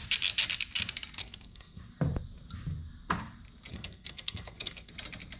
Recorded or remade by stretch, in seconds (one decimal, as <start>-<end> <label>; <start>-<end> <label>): 0.0-1.2 recorded; 1.2-1.8 remade; 1.8-3.7 recorded; 3.7-4.9 remade; 4.9-5.4 recorded